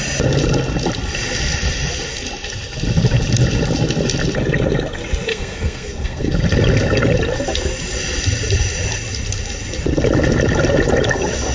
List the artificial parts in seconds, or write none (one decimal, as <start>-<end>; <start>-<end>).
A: 5.3-6.3